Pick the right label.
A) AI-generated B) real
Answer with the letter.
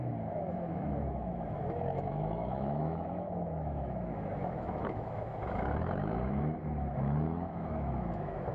A